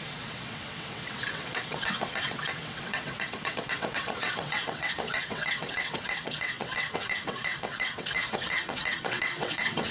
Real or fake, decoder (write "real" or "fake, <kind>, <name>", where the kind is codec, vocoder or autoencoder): fake, vocoder, WaveNeXt